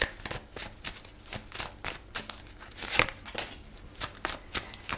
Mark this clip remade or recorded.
recorded